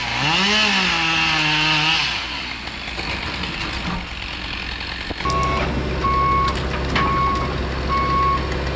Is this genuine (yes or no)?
yes